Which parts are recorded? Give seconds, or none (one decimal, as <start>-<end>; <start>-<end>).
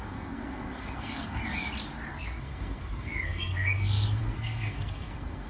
1.4-2.1